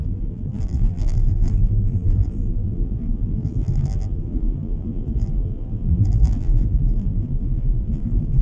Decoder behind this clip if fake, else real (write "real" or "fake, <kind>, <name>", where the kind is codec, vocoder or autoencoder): fake, vocoder, BigVGAN v2